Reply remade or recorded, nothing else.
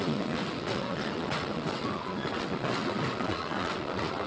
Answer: remade